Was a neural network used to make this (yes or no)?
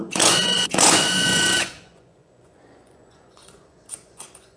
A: yes